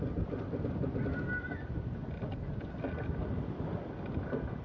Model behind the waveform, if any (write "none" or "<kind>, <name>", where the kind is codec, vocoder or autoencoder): none